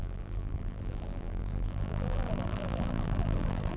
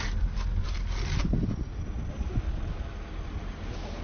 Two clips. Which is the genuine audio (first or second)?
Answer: second